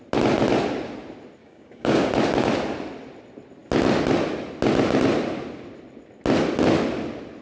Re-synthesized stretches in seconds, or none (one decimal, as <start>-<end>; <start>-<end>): 1.4-2.1